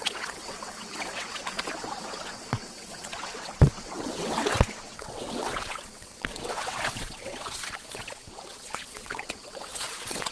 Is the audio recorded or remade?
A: remade